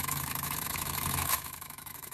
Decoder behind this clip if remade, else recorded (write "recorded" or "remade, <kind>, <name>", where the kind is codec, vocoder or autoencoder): remade, autoencoder, DAC-VAE